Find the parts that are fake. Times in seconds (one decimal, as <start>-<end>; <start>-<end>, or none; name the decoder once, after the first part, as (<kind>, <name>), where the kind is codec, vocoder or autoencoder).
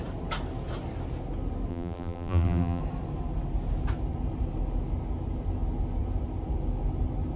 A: 1.7-2.8 (vocoder, BigVGAN v2)